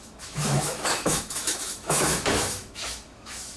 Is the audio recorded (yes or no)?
no